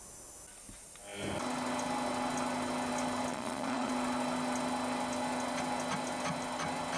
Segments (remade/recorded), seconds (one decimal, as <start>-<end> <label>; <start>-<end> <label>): 0.0-3.3 recorded; 3.3-3.9 remade; 3.9-7.0 recorded